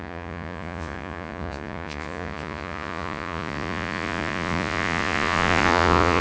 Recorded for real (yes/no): no